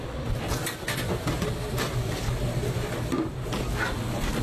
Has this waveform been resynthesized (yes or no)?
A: no